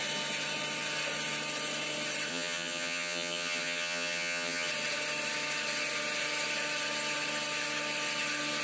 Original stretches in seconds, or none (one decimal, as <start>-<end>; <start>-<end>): 0.0-2.3; 4.7-8.6